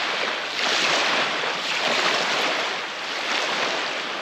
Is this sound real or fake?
real